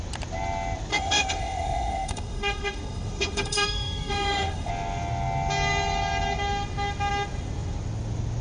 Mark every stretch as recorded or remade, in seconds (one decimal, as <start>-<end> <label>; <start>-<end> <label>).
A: 0.0-0.9 recorded; 0.9-4.7 remade; 4.7-8.4 recorded